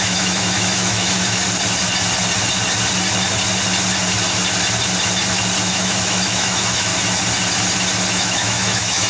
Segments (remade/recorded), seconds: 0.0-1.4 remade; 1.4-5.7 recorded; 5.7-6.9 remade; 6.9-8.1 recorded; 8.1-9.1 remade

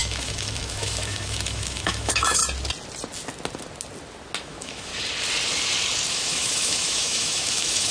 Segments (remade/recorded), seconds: 0.0-2.4 remade; 2.4-4.4 recorded; 4.4-4.9 remade; 4.9-6.1 recorded; 6.1-7.9 remade

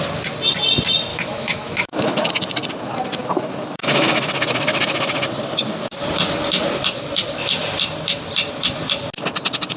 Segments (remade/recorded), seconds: 0.0-1.1 recorded; 1.1-2.3 remade; 2.3-3.2 recorded; 3.2-4.3 remade; 4.3-9.8 recorded

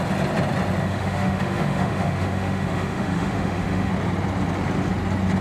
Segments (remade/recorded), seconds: 0.0-0.8 recorded; 0.8-3.9 remade; 3.9-5.4 recorded

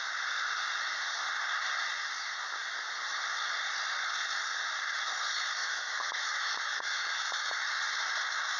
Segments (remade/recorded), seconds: 0.0-5.6 recorded; 5.6-7.8 remade; 7.8-8.6 recorded

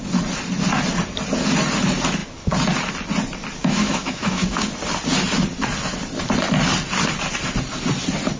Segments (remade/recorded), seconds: 0.0-3.6 recorded; 3.6-4.6 remade; 4.6-8.4 recorded